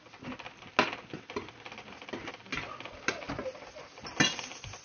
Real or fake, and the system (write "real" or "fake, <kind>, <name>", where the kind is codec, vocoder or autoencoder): real